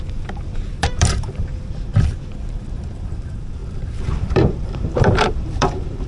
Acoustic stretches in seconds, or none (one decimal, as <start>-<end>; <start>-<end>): 1.9-2.5